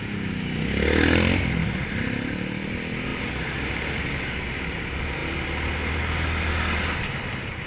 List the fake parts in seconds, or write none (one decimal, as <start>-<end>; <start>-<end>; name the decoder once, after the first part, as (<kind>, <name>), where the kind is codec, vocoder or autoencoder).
none